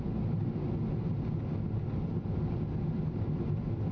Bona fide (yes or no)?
yes